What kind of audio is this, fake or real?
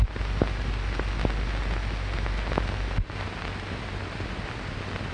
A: real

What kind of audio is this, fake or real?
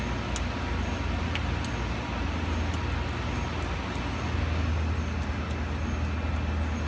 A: real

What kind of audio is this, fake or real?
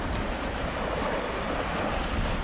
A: real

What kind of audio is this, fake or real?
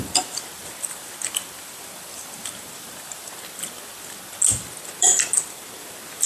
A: fake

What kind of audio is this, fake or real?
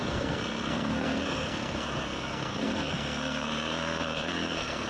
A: fake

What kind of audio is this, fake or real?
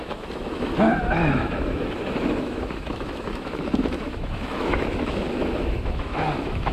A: fake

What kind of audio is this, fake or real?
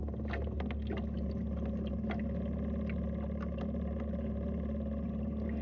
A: real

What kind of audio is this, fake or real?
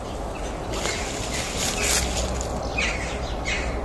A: real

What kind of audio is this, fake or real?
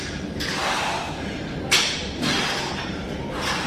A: real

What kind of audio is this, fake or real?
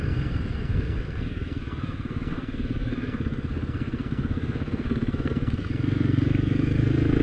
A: fake